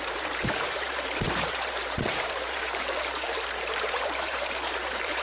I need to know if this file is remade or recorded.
remade